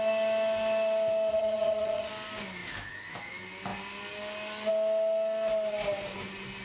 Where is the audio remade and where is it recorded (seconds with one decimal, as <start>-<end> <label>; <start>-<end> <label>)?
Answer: 0.0-1.3 recorded; 1.3-2.1 remade; 2.1-6.6 recorded